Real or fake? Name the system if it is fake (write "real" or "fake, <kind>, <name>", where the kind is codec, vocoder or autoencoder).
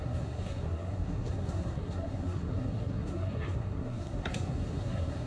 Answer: fake, codec, SNAC